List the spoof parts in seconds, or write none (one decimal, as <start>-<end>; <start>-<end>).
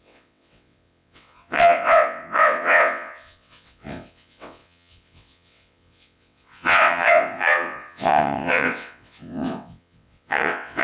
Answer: 0.0-10.8